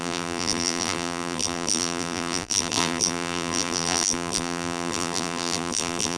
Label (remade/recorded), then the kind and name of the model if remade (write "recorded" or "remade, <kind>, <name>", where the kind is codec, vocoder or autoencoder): remade, vocoder, BigVGAN v2